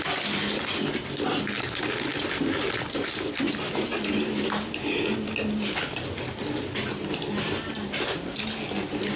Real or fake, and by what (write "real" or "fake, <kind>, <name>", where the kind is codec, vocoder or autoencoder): real